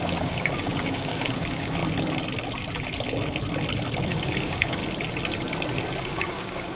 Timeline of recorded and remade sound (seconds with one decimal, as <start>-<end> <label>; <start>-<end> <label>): 0.0-1.8 remade; 1.8-4.0 recorded; 4.0-4.8 remade; 4.8-6.0 recorded; 6.0-6.8 remade